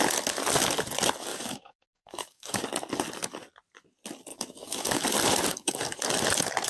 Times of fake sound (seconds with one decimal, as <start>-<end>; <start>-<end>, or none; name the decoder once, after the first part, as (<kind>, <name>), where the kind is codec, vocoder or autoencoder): 1.3-2.6 (codec, DAC); 4.3-5.0; 5.5-6.0